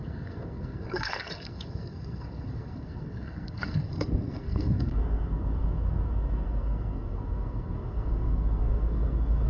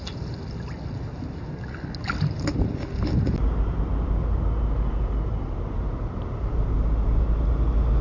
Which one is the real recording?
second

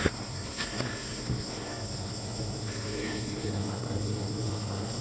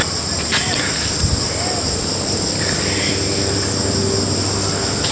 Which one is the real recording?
second